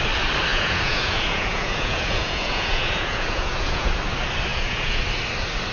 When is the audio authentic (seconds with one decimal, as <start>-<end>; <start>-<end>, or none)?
0.0-0.5; 3.9-4.5; 5.0-5.7

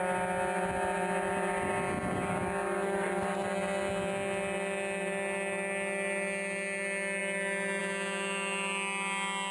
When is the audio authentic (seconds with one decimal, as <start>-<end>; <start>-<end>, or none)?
0.0-9.5